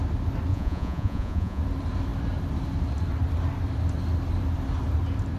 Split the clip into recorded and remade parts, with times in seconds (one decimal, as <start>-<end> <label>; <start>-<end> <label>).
0.0-0.5 recorded; 0.5-1.6 remade; 1.6-5.4 recorded